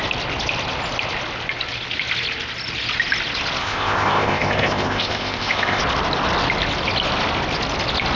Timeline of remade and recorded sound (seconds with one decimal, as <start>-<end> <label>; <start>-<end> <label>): 0.0-3.6 recorded; 3.6-5.8 remade; 5.8-8.1 recorded